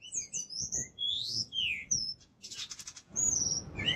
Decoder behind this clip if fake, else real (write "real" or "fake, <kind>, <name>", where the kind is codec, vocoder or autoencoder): fake, vocoder, Vocos